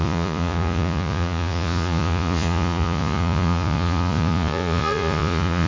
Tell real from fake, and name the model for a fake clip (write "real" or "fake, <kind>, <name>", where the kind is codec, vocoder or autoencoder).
fake, vocoder, Vocos